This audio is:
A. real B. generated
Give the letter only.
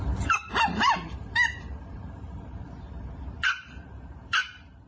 B